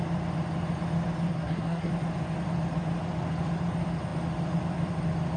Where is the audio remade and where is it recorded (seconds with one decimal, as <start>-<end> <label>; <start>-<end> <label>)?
0.0-1.3 recorded; 1.3-1.9 remade; 1.9-5.4 recorded